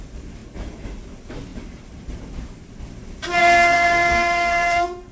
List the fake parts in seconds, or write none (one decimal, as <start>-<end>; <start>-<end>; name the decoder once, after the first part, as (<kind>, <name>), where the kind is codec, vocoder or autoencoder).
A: 3.4-5.1 (codec, SNAC)